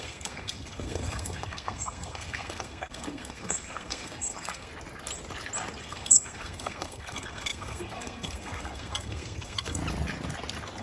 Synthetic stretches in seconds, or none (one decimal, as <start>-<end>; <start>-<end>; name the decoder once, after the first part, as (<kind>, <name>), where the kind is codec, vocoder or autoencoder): 0.0-4.7 (codec, SNAC); 5.8-9.8